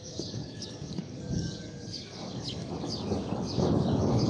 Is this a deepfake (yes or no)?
yes